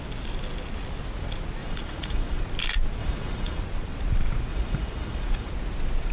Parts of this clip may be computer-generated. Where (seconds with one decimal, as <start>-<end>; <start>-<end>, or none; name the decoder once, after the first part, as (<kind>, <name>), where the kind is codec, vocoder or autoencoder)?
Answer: 1.6-2.4 (vocoder, Vocos); 3.0-3.6; 4.5-5.5